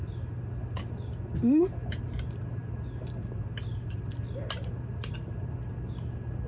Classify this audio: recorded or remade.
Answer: recorded